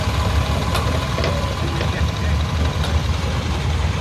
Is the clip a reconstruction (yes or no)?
yes